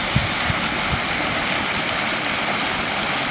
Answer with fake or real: real